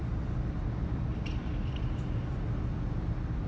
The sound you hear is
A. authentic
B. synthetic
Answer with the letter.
A